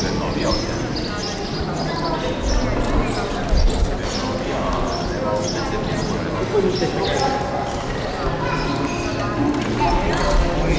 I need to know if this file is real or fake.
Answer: real